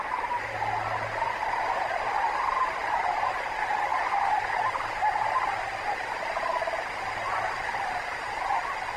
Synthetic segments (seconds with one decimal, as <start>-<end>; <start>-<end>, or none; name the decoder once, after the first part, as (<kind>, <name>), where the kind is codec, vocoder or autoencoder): none